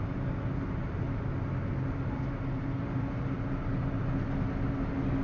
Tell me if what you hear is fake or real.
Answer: real